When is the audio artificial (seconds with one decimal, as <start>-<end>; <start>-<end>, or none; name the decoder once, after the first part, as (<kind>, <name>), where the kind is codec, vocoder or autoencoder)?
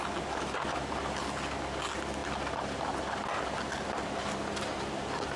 none